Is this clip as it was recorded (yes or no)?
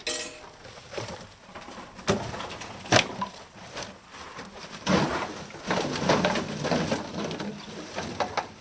yes